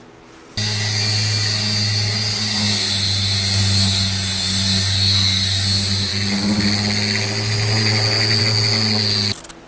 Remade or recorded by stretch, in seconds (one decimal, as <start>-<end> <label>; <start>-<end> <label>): 0.0-9.7 recorded